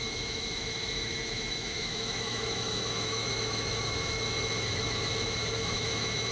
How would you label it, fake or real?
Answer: fake